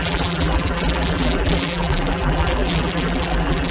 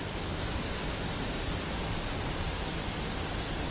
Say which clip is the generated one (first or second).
first